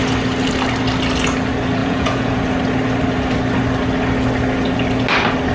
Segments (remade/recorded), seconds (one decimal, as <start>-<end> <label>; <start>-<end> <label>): 0.0-1.8 recorded; 1.8-2.4 remade; 2.4-5.5 recorded